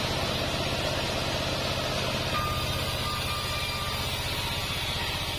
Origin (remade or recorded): recorded